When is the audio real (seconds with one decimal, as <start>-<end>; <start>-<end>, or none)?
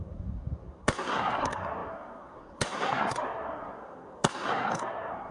none